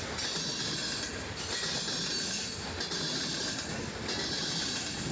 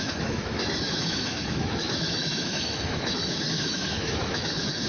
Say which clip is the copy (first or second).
second